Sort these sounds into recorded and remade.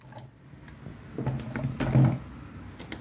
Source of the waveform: recorded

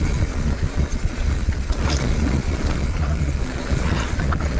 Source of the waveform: remade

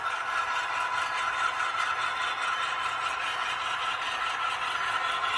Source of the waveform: recorded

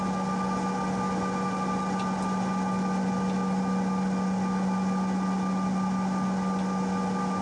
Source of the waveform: recorded